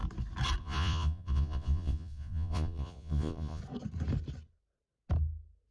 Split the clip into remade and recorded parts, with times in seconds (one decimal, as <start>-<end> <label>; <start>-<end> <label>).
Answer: 0.0-0.6 recorded; 0.6-3.6 remade; 3.6-5.7 recorded